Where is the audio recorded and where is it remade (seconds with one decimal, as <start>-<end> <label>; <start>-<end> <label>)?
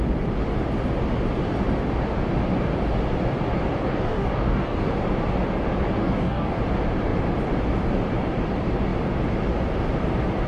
0.0-3.9 recorded; 3.9-4.9 remade; 4.9-6.0 recorded; 6.0-6.6 remade; 6.6-10.5 recorded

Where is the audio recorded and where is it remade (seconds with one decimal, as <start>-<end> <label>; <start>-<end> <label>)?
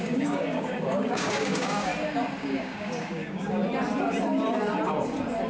0.0-1.9 remade; 1.9-2.4 recorded; 2.4-3.6 remade; 3.6-5.5 recorded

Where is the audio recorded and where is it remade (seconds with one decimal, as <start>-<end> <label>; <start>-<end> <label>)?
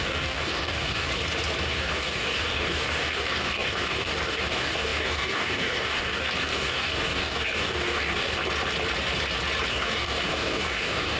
0.0-1.1 remade; 1.1-1.7 recorded; 1.7-8.4 remade; 8.4-9.7 recorded; 9.7-11.2 remade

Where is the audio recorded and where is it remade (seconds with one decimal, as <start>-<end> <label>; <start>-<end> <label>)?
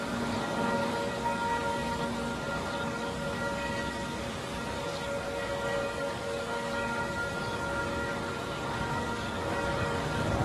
0.0-10.4 remade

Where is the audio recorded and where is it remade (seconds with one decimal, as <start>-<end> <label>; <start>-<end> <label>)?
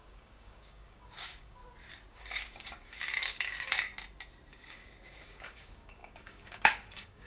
0.0-1.6 remade; 1.6-2.1 recorded; 2.1-3.9 remade; 3.9-4.5 recorded; 4.5-7.3 remade